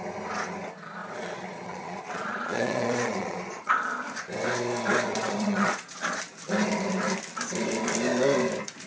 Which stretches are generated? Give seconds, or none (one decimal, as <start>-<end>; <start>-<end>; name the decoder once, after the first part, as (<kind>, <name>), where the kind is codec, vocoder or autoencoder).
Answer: 1.0-3.7 (vocoder, Vocos); 5.1-6.2